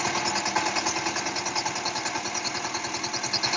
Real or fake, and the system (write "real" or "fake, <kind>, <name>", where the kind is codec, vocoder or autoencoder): real